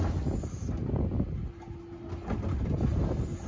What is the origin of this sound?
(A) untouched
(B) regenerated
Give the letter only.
A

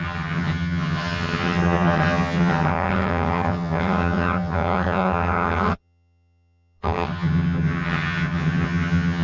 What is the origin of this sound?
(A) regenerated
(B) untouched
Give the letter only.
A